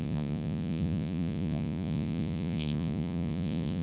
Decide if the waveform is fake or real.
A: fake